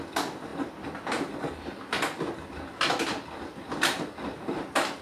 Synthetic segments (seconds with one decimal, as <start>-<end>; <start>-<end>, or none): none